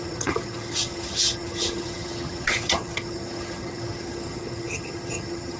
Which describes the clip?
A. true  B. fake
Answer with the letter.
B